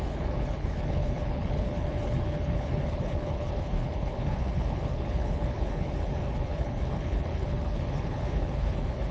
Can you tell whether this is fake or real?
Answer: fake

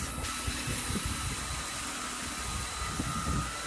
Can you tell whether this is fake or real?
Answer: real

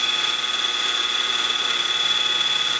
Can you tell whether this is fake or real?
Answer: real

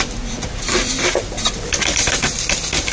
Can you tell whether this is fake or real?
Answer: real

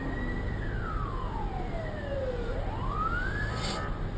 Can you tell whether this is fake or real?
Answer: real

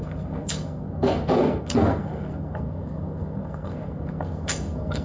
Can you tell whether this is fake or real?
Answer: fake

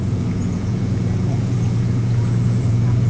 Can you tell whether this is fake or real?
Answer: fake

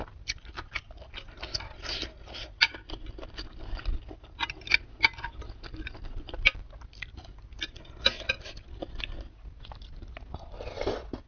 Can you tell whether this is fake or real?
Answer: real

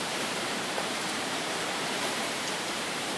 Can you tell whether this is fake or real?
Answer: fake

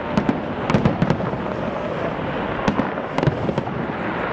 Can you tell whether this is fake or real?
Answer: real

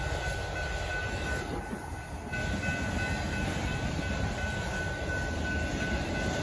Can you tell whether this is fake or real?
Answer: real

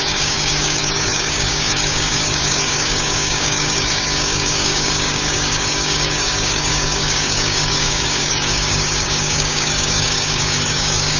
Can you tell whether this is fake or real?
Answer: fake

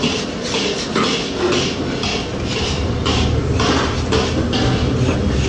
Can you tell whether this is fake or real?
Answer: real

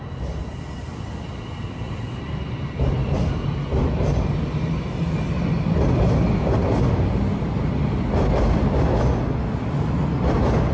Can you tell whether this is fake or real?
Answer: real